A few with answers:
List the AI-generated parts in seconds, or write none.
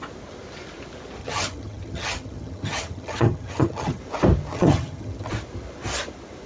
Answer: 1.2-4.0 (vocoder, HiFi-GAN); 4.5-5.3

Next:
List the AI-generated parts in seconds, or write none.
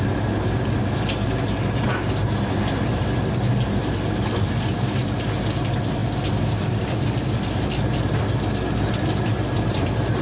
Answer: none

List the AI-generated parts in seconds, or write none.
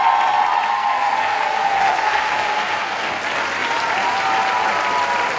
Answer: 0.7-3.1 (codec, SNAC)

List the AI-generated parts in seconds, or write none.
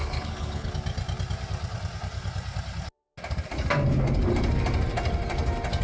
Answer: 0.0-0.7 (codec, HILCodec)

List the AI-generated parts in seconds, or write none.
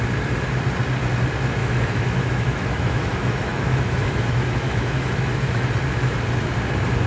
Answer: 1.6-5.7 (autoencoder, DAC-VAE)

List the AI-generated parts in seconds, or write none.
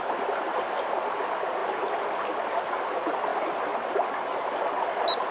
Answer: none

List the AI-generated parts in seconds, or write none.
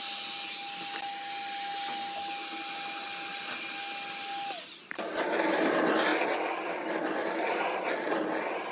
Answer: 7.2-8.1 (vocoder, BigVGAN v2)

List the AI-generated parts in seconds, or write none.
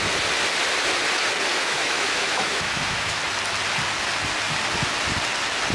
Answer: 1.5-3.2 (autoencoder, DAC-VAE)